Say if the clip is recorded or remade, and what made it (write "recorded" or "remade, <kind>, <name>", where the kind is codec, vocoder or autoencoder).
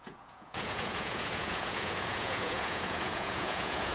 remade, vocoder, Vocos